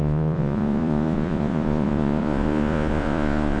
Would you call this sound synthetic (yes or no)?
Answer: yes